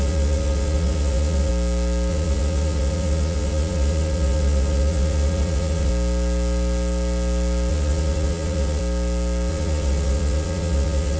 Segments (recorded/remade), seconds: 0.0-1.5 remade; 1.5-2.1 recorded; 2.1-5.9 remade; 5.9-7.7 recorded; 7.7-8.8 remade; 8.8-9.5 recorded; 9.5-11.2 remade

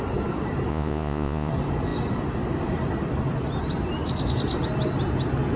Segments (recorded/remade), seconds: 0.0-0.7 recorded; 0.7-1.5 remade; 1.5-5.6 recorded

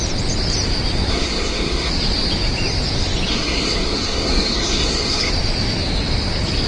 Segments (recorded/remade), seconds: 0.0-1.1 recorded; 1.1-1.9 remade; 1.9-3.3 recorded; 3.3-5.3 remade; 5.3-6.7 recorded

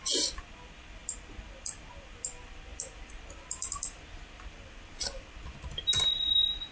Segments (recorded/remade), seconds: 0.0-6.7 recorded

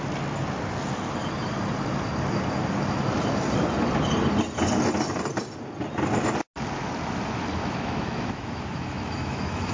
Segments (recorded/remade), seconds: 0.0-7.6 recorded; 7.6-9.7 remade

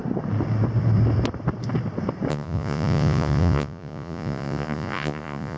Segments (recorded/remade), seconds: 0.0-2.3 recorded; 2.3-5.6 remade